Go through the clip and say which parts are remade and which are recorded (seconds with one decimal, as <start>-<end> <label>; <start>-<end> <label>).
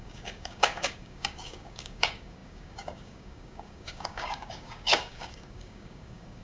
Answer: 0.0-6.4 remade